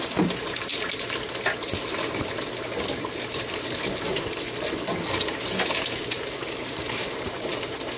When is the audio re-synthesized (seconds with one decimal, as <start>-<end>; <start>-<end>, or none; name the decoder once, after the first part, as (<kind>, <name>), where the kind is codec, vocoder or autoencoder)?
none